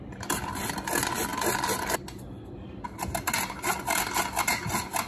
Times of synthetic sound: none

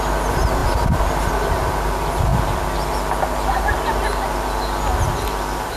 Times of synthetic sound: none